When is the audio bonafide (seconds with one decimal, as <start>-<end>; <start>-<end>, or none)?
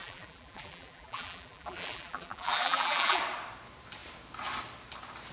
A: 3.2-5.3